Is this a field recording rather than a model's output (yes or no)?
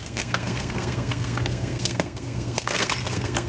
no